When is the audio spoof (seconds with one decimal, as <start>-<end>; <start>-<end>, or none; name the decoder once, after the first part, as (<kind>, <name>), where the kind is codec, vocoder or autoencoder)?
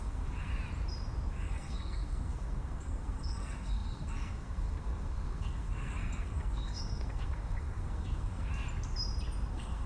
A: 0.0-0.5 (codec, SNAC); 1.3-8.5; 9.5-9.9